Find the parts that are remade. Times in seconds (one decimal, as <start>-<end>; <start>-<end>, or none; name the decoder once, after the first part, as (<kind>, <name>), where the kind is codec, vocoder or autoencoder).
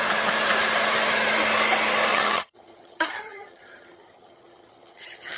2.1-5.4 (vocoder, HiFi-GAN)